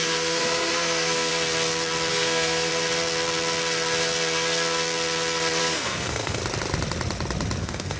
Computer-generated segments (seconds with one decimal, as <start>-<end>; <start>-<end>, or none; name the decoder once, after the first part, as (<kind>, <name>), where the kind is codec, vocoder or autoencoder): 0.0-1.3 (codec, SNAC); 2.1-2.7; 5.6-6.4; 7.6-8.0